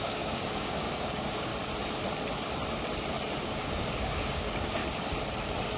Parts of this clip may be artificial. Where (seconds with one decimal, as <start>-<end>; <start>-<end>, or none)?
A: 0.0-1.5; 3.4-4.8